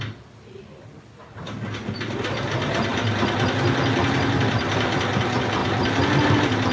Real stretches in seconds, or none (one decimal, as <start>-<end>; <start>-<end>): 0.0-6.7